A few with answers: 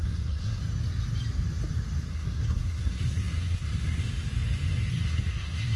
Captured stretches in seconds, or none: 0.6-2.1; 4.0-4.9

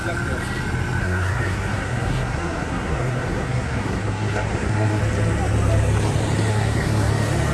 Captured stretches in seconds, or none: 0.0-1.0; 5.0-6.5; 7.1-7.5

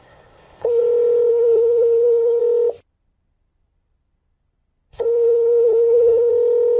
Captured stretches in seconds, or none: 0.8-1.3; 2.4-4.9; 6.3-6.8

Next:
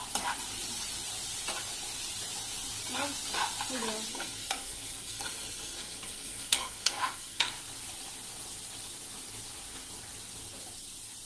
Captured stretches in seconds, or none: 0.0-4.1; 7.5-11.3

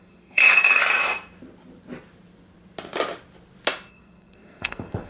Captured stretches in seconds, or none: 0.8-3.9

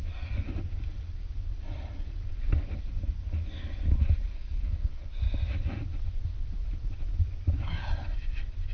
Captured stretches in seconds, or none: 0.0-4.3; 5.1-8.7